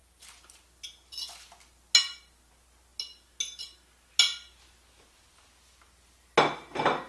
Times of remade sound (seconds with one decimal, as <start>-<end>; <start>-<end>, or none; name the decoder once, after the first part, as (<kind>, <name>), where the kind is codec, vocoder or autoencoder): none